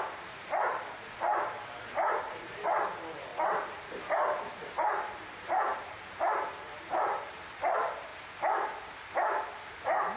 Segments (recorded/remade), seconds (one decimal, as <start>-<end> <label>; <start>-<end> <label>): 0.0-8.1 remade; 8.1-9.7 recorded; 9.7-10.2 remade

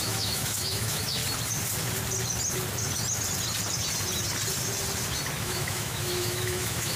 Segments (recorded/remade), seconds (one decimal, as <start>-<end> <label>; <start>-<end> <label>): 0.0-1.2 remade; 1.2-5.4 recorded; 5.4-7.0 remade

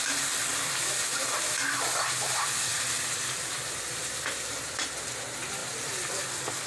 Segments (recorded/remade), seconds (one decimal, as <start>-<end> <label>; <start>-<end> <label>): 0.0-2.7 recorded; 2.7-4.8 remade; 4.8-5.6 recorded; 5.6-6.2 remade; 6.2-6.7 recorded

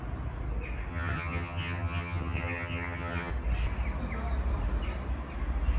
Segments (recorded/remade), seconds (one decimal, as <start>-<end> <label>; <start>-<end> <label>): 0.0-0.9 recorded; 0.9-3.3 remade; 3.3-5.8 recorded